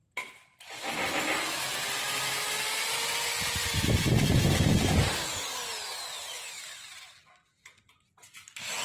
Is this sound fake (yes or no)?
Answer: no